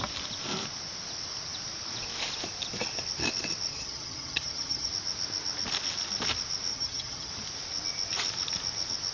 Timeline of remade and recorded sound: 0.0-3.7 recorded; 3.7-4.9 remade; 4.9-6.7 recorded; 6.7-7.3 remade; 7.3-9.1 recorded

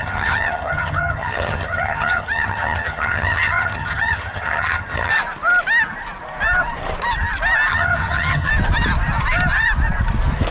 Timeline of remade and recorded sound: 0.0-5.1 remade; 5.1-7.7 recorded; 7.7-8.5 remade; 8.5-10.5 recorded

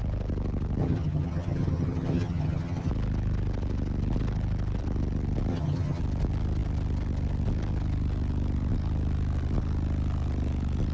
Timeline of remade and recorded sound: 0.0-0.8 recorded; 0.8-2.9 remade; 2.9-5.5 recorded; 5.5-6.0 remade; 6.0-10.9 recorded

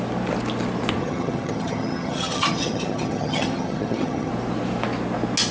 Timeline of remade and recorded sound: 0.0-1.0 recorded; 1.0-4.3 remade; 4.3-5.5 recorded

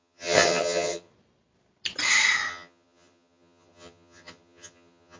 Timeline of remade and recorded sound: 0.0-1.1 remade; 1.1-2.5 recorded; 2.5-5.2 remade

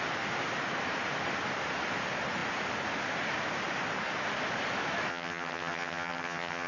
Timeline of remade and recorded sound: 0.0-5.1 recorded; 5.1-6.7 remade

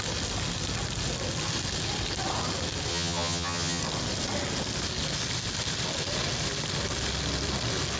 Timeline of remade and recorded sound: 0.0-2.9 recorded; 2.9-3.8 remade; 3.8-8.0 recorded